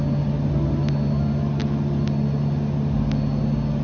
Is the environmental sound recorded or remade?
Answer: recorded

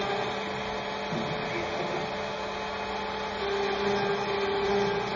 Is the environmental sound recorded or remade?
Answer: recorded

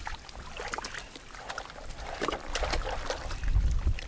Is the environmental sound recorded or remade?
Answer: recorded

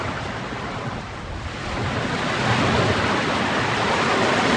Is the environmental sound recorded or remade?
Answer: recorded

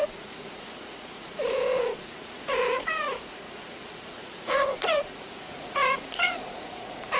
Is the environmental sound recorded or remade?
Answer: remade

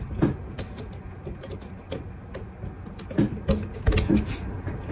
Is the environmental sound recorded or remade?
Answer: recorded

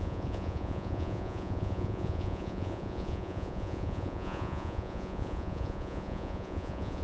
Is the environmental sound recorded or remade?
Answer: remade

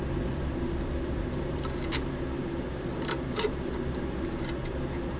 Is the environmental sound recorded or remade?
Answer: remade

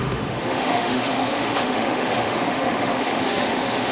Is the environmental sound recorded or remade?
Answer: remade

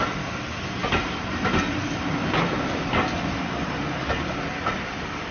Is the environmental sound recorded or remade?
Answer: recorded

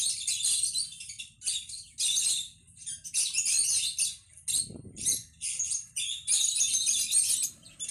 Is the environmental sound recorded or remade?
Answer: recorded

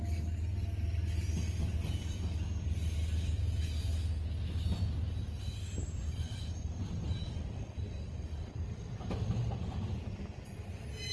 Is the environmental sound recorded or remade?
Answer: recorded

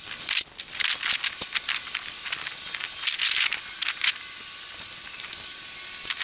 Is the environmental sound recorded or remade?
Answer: remade